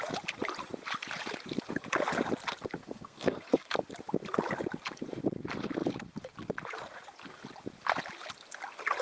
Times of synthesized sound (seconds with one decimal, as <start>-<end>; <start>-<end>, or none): 2.8-3.7